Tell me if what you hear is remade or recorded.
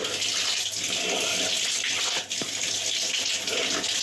recorded